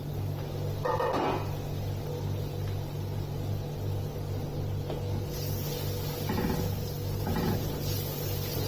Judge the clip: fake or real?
real